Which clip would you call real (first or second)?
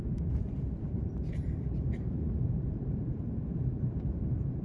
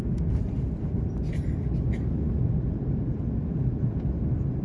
second